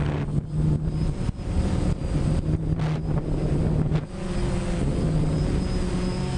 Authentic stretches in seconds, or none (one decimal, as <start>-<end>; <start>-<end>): 0.0-6.4